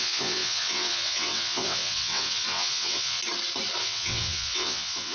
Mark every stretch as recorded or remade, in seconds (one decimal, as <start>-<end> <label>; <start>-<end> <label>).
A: 0.0-3.2 remade; 3.2-3.8 recorded; 3.8-5.1 remade